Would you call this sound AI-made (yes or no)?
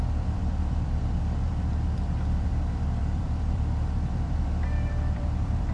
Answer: yes